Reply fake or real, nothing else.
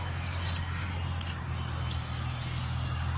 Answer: real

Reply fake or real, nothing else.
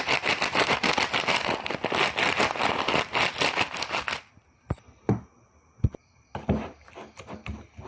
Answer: real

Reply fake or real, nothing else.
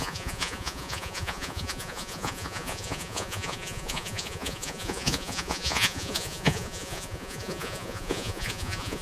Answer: fake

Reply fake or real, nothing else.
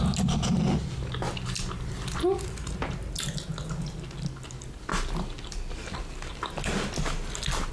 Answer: real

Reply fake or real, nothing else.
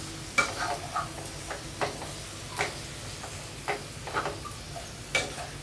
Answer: real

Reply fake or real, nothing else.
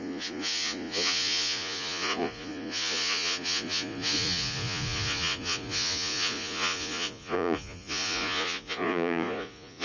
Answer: fake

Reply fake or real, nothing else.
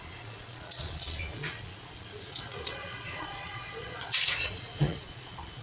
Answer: fake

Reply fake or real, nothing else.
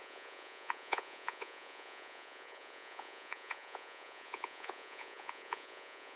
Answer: fake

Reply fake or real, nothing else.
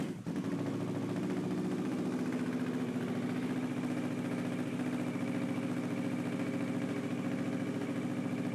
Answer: real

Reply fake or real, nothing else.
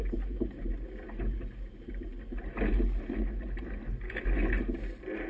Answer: real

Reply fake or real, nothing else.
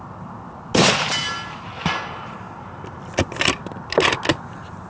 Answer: real